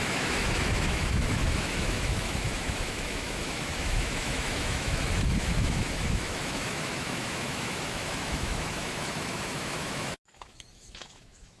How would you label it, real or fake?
fake